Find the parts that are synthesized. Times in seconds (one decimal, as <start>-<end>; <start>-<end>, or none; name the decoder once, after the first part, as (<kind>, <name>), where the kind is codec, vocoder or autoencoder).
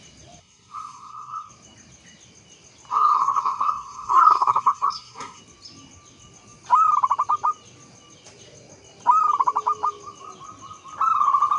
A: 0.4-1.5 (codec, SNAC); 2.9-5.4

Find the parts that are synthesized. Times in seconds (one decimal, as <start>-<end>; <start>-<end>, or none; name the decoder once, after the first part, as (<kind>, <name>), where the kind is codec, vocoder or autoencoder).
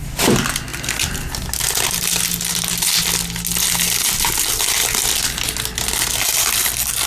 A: none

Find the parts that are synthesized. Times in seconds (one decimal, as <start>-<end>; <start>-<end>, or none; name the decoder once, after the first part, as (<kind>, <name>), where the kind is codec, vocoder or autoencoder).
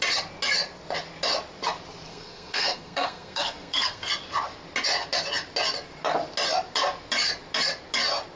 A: 2.1-4.1 (codec, SNAC)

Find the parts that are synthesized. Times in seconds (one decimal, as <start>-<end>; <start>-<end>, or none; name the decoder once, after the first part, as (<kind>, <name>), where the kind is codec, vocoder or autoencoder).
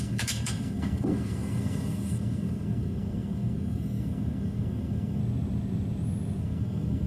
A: 0.0-5.2 (codec, SNAC); 6.4-7.1